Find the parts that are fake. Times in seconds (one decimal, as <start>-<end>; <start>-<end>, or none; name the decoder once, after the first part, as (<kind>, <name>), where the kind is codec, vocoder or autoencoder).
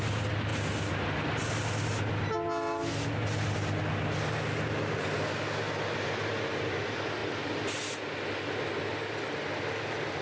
none